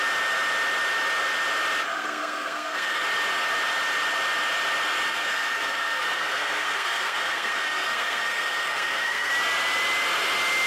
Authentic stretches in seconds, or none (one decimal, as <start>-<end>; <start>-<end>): 0.0-1.9; 3.0-5.1; 9.3-10.7